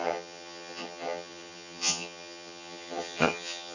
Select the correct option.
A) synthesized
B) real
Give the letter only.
A